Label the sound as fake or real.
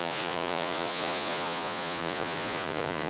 fake